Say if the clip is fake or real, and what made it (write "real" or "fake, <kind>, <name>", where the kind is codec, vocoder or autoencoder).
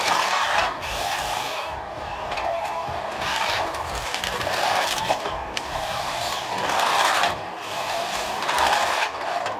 fake, codec, DAC